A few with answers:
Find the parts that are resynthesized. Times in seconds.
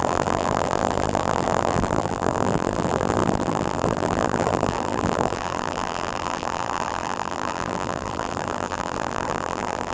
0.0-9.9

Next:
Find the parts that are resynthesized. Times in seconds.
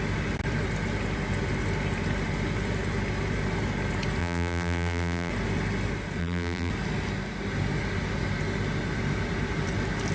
4.2-5.3; 6.2-6.7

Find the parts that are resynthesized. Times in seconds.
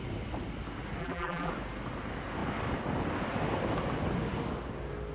1.0-1.5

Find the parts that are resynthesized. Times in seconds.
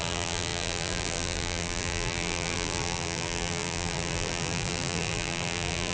0.0-5.9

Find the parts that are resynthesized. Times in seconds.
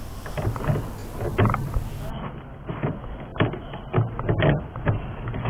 none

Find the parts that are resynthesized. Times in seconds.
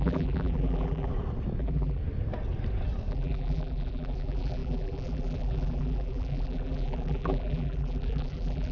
0.0-1.1; 1.6-2.0; 3.1-8.7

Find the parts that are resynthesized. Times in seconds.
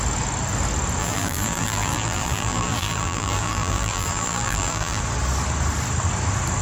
1.0-5.0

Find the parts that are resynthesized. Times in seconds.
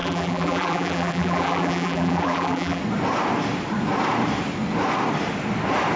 0.0-2.8